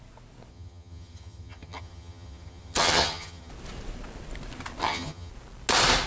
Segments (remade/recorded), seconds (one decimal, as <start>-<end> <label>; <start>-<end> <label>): 0.0-0.5 recorded; 0.5-3.5 remade; 3.5-4.8 recorded; 4.8-5.3 remade; 5.3-6.1 recorded